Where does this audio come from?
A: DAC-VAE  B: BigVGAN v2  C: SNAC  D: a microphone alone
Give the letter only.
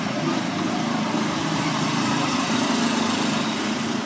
B